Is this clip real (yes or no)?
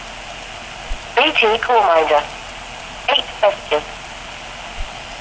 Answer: yes